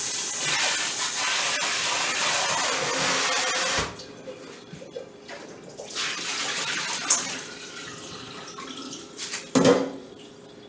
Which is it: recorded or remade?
recorded